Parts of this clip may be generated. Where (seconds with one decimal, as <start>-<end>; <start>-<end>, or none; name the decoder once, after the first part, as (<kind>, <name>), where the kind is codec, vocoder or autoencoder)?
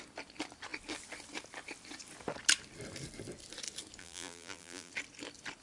4.0-4.9 (vocoder, BigVGAN v2)